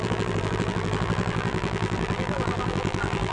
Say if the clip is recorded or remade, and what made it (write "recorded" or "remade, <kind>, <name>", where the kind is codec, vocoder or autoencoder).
remade, vocoder, BigVGAN v2